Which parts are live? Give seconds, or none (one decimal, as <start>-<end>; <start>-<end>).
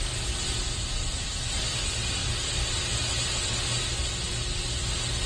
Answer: 0.0-5.3